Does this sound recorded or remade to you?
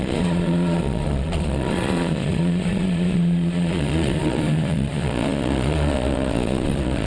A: remade